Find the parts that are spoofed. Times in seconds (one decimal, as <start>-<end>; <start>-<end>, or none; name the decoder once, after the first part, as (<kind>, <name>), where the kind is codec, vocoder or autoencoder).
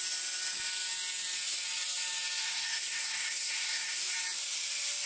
2.4-4.0 (codec, SNAC)